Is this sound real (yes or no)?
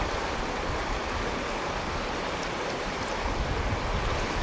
yes